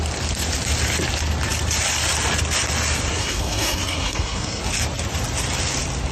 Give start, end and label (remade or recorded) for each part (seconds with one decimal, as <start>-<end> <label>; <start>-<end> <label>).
0.0-3.1 recorded; 3.1-4.6 remade; 4.6-6.1 recorded